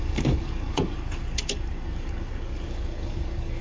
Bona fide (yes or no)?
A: no